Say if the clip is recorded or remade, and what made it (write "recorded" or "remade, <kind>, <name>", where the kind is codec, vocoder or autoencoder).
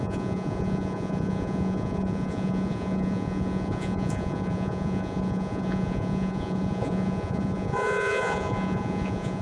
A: remade, vocoder, Vocos